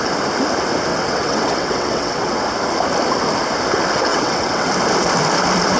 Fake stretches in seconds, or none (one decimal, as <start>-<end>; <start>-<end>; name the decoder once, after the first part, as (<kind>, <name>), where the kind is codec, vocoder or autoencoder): 0.9-2.4 (vocoder, WaveNeXt); 4.1-4.7